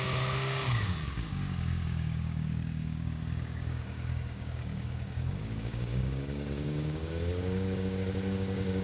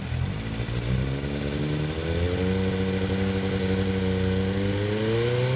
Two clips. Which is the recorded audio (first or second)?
second